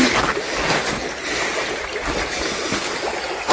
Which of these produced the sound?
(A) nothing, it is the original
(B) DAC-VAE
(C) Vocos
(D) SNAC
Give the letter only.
A